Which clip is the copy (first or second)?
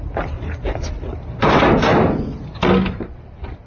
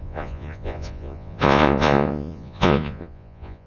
second